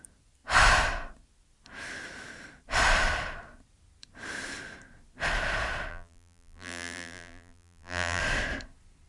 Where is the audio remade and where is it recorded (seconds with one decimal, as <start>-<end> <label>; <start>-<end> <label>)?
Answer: 0.0-5.9 recorded; 5.9-8.2 remade; 8.2-9.1 recorded